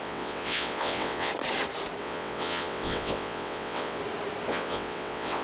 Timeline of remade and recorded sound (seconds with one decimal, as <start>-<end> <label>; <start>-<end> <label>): 0.0-1.3 remade; 1.3-2.0 recorded; 2.0-4.0 remade; 4.0-4.5 recorded; 4.5-5.4 remade